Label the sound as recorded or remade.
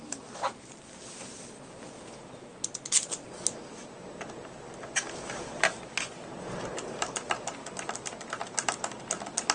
recorded